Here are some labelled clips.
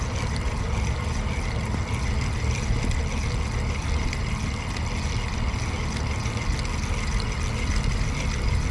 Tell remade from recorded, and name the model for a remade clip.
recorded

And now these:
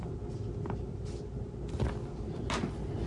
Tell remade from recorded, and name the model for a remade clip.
recorded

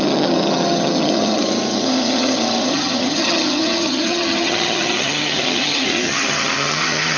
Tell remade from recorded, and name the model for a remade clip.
remade, vocoder, HiFi-GAN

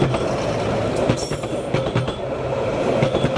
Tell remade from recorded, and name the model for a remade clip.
recorded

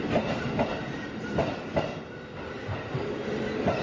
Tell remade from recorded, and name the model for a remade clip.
recorded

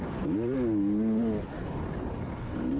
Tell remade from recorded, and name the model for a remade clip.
recorded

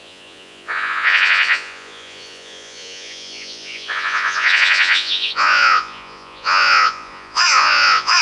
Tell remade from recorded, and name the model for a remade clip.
remade, vocoder, Vocos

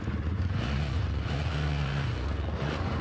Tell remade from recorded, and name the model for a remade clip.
remade, vocoder, Vocos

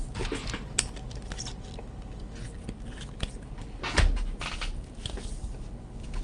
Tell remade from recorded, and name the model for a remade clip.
recorded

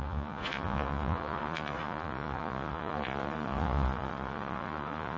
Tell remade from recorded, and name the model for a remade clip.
remade, vocoder, Vocos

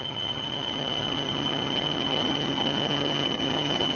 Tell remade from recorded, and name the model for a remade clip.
remade, vocoder, HiFi-GAN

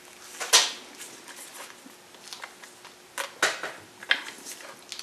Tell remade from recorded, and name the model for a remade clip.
recorded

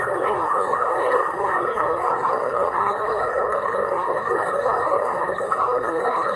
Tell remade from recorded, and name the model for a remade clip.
remade, codec, SNAC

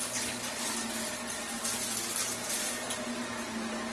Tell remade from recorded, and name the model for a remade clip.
recorded